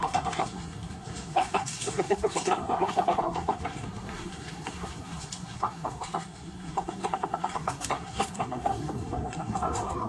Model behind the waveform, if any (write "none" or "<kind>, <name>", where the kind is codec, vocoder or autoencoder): codec, SNAC